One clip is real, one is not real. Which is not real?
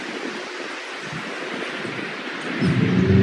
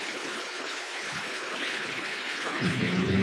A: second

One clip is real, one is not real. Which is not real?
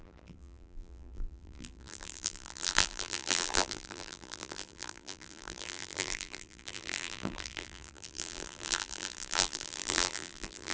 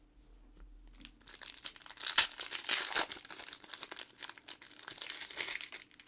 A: first